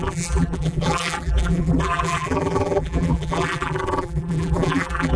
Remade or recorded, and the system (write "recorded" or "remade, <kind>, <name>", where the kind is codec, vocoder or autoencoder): remade, vocoder, BigVGAN v2